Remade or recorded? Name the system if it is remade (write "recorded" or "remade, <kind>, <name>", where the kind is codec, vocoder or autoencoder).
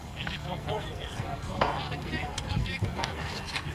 remade, codec, SNAC